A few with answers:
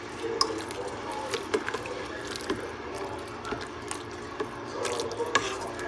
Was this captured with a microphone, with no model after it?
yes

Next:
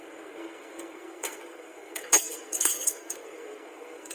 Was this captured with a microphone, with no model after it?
no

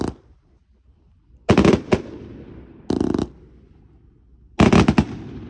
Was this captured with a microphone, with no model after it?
yes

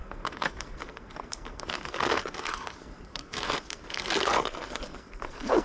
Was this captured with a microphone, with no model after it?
no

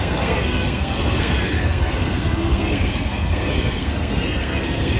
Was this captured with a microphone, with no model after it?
no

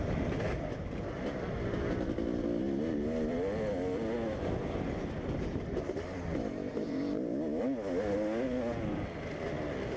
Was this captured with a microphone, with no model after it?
yes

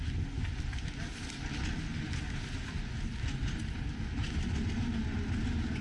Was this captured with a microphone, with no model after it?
yes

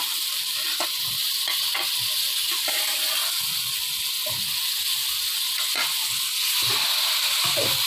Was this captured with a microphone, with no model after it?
yes